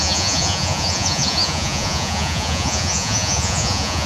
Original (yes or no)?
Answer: no